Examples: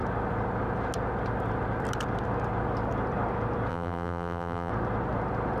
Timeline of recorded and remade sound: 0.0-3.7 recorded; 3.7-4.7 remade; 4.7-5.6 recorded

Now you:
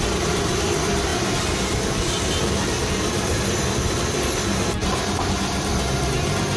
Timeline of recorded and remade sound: 0.0-6.6 recorded

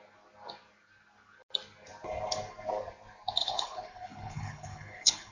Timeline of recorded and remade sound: 0.0-3.4 recorded; 3.4-5.3 remade

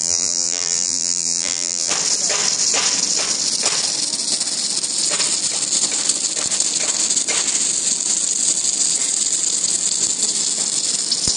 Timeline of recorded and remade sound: 0.0-1.9 remade; 1.9-11.4 recorded

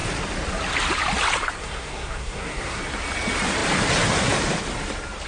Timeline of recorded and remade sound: 0.0-1.6 recorded; 1.6-2.8 remade; 2.8-5.3 recorded

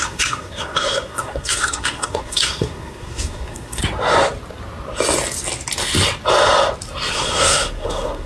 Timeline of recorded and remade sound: 0.0-3.8 remade; 3.8-7.1 recorded; 7.1-8.3 remade

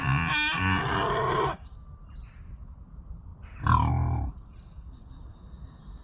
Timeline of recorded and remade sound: 0.0-6.0 recorded

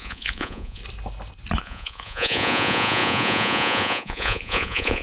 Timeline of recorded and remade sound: 0.0-0.8 remade; 0.8-1.6 recorded; 1.6-5.0 remade